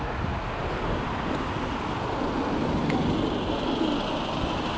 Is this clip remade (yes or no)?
no